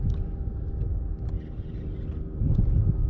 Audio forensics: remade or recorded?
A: recorded